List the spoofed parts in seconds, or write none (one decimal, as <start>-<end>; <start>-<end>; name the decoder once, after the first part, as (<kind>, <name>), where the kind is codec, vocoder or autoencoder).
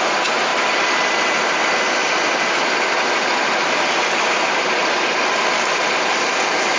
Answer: none